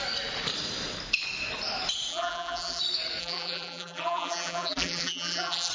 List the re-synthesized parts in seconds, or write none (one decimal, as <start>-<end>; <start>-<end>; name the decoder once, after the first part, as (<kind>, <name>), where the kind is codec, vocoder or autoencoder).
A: 2.1-2.8 (vocoder, BigVGAN v2); 3.2-5.7